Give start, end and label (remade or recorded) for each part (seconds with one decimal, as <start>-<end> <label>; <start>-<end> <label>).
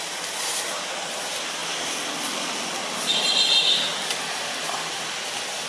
0.0-5.7 recorded